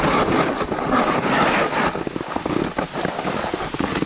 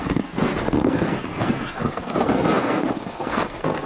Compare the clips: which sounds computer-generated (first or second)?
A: second